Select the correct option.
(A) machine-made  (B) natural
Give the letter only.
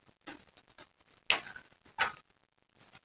B